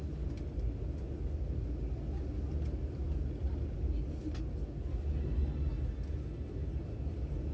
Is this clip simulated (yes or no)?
no